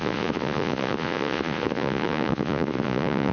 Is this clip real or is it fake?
fake